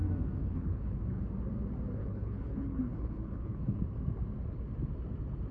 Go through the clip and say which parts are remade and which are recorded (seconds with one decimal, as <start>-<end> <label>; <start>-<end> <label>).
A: 0.0-0.4 recorded; 0.4-1.2 remade; 1.2-2.0 recorded; 2.0-3.8 remade; 3.8-5.5 recorded